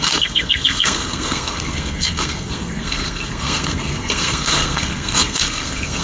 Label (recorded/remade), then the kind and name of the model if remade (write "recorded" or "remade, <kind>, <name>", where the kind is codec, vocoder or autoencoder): remade, codec, SNAC